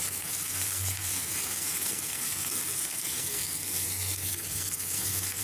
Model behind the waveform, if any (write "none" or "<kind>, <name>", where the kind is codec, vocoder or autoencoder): codec, SNAC